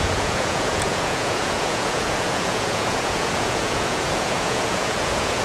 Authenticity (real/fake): fake